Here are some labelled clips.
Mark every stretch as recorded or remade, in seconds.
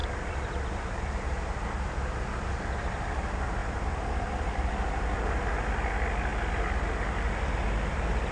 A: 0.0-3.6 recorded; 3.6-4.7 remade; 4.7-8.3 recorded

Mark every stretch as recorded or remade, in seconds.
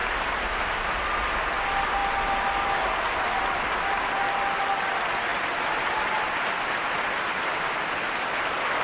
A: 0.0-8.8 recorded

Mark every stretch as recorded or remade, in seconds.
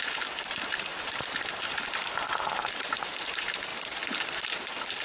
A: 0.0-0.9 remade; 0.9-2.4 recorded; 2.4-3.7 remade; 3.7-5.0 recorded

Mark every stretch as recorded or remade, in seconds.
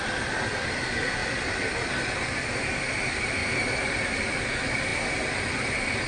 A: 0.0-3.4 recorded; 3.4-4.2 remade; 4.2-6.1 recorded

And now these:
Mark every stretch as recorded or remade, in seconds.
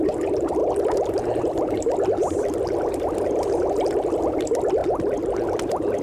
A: 0.0-0.6 remade; 0.6-4.2 recorded; 4.2-4.8 remade; 4.8-6.0 recorded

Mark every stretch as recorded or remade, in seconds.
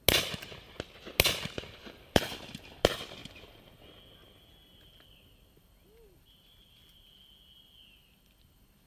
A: 0.0-1.8 recorded; 1.8-2.6 remade; 2.6-3.2 recorded; 3.2-3.8 remade; 3.8-8.9 recorded